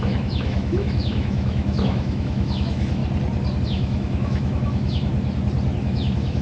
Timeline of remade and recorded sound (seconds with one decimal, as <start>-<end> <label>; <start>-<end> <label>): 0.0-3.0 remade; 3.0-3.6 recorded; 3.6-5.1 remade; 5.1-5.8 recorded; 5.8-6.4 remade